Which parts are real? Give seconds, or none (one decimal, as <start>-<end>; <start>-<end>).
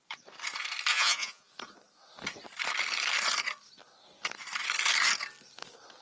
0.0-0.9; 1.5-6.0